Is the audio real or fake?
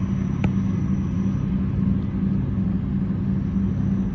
real